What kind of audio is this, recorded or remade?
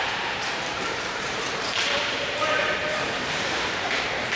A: remade